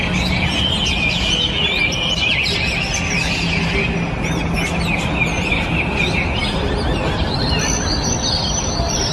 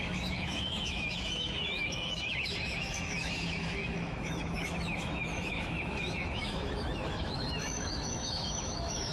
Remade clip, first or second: second